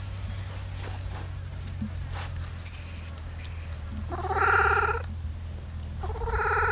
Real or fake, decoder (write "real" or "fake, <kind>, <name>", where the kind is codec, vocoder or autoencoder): real